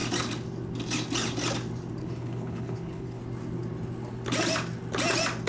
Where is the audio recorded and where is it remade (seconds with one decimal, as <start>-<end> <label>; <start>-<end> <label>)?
0.0-2.0 recorded; 2.0-3.2 remade; 3.2-5.5 recorded